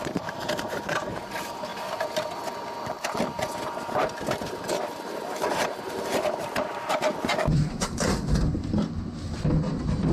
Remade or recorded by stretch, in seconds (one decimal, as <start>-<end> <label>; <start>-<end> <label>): 0.0-1.7 remade; 1.7-3.7 recorded; 3.7-10.1 remade